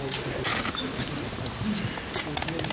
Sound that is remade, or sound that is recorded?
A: recorded